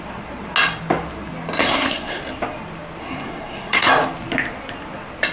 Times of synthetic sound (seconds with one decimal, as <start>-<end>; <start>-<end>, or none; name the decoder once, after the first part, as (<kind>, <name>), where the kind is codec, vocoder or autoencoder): 1.6-2.2 (codec, SNAC); 3.0-3.9